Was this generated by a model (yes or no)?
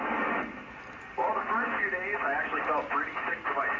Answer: no